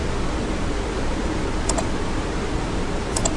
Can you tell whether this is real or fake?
real